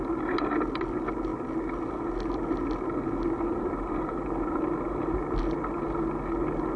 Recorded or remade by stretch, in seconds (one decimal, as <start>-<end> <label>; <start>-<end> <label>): 0.0-6.8 recorded